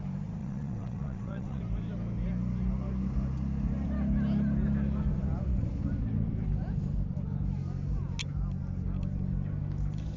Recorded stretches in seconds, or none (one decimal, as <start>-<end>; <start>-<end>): 0.0-0.4; 1.6-10.2